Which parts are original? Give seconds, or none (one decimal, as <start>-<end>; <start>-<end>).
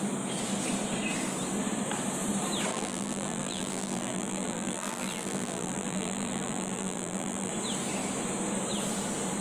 0.0-2.7; 7.5-9.4